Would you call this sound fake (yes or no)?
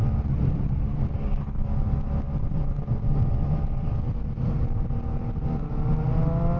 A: no